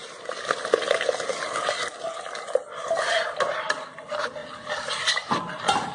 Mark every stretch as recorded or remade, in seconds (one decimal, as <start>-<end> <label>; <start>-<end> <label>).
0.0-5.9 recorded